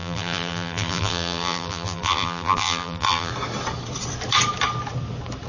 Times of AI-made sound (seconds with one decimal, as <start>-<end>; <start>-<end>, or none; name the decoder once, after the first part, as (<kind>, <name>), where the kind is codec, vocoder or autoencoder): 0.0-3.3 (vocoder, BigVGAN v2)